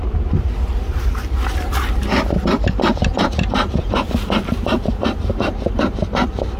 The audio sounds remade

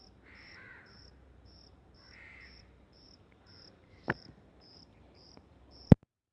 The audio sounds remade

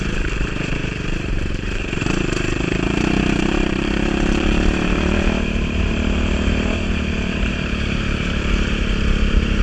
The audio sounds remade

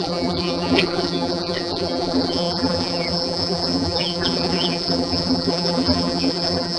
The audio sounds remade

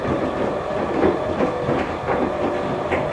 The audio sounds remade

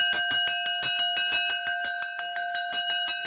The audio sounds recorded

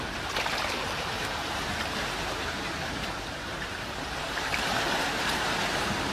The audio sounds remade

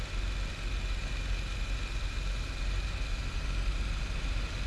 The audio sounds recorded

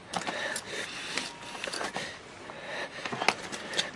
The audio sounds recorded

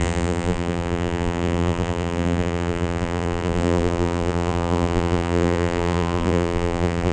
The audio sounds remade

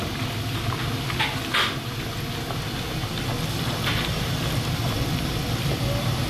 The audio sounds recorded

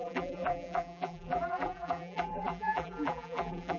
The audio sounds remade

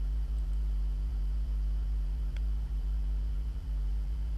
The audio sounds remade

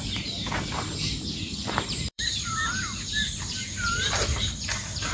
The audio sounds remade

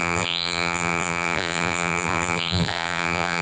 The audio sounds remade